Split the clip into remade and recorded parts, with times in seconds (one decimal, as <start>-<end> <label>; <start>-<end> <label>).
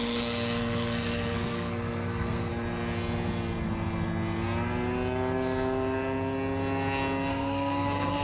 0.0-2.5 remade; 2.5-7.3 recorded; 7.3-8.2 remade